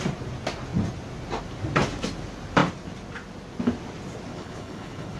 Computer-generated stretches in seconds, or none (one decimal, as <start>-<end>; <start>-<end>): 4.3-5.2